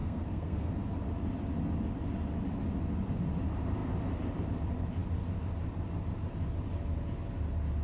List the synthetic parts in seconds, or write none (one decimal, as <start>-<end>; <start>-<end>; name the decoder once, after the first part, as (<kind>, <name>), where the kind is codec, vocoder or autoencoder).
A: 0.0-0.7 (codec, SNAC)